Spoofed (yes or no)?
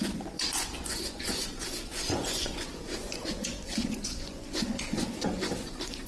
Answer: yes